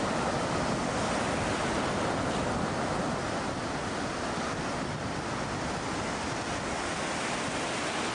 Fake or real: real